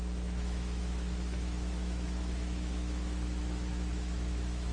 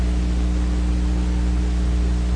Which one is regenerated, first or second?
first